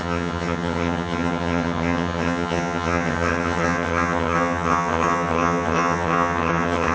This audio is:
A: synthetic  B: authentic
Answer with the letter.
A